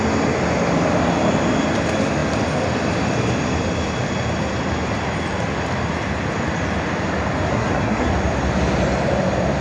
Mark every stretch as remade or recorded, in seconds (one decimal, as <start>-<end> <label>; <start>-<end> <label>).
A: 0.0-7.5 recorded; 7.5-8.1 remade; 8.1-9.6 recorded